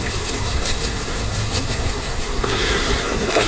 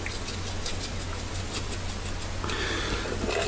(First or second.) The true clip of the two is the second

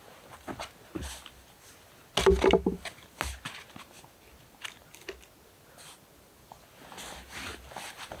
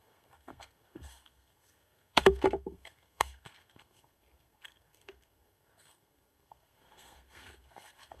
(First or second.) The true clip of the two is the first